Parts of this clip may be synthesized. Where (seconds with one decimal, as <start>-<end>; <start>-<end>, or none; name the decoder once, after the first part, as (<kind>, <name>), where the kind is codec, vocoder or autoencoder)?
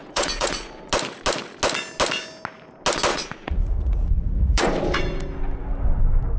0.0-0.9 (vocoder, Vocos); 3.1-4.7